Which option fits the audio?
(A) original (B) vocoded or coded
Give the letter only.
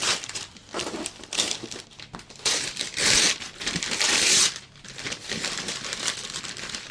B